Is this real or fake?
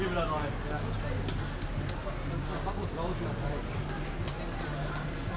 real